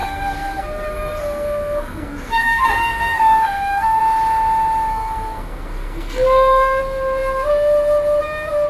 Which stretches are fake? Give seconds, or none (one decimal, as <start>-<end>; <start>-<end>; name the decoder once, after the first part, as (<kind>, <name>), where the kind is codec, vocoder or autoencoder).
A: 0.0-4.0 (codec, SNAC); 4.9-6.8

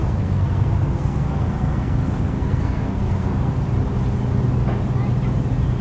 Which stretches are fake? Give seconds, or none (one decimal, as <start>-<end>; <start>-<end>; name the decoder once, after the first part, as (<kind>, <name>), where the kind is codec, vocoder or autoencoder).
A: 0.0-3.5 (codec, SNAC)

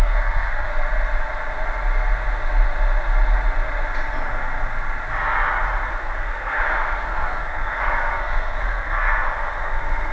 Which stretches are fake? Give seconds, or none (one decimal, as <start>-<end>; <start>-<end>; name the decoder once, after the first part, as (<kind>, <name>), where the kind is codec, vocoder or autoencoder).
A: 0.0-0.7 (codec, SNAC); 5.9-10.1

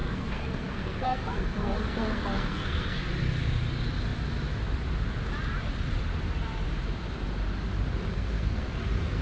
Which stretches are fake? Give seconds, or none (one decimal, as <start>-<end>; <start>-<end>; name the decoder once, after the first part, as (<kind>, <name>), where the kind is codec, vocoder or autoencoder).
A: 0.0-3.1 (codec, SNAC); 8.1-9.2

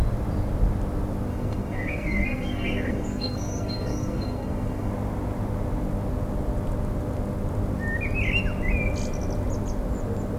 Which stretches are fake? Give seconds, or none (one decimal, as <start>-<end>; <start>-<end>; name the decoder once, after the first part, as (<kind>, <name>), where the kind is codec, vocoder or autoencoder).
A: 1.3-4.9 (codec, SNAC)

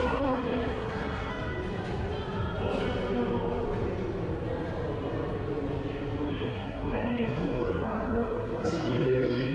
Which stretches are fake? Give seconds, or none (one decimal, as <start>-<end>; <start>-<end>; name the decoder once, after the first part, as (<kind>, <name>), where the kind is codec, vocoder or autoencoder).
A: 0.0-1.3 (codec, SNAC); 6.3-9.5